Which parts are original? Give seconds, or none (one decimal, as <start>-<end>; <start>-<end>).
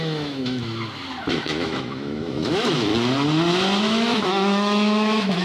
0.6-1.3; 2.9-3.8